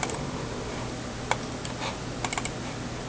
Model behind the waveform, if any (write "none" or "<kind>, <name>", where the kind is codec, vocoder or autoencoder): none